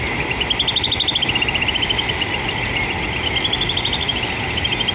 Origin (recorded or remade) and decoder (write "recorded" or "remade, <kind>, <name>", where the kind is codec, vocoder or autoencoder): recorded